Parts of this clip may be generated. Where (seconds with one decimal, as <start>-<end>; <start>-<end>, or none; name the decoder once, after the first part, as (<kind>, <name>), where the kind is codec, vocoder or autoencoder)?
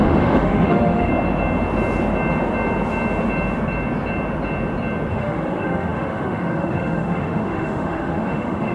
0.0-1.1 (autoencoder, DAC-VAE); 5.1-8.7